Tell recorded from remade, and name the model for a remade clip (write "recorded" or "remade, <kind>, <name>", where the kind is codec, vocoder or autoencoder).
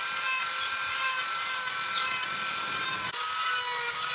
recorded